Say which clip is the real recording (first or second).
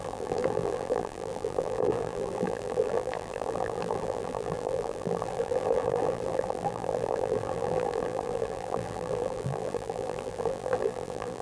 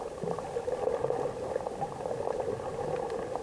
second